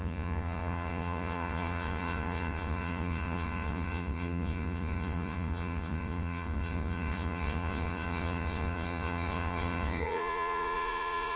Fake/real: fake